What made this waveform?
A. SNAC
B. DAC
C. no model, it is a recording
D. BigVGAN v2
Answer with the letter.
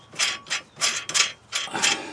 C